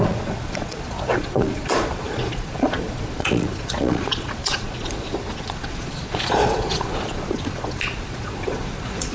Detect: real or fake fake